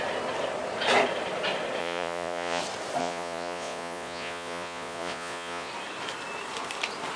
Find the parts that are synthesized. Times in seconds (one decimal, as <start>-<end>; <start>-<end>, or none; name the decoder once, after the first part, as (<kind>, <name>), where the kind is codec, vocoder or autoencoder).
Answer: 1.8-2.6 (vocoder, Vocos); 3.0-5.7